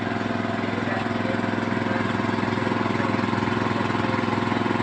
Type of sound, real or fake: real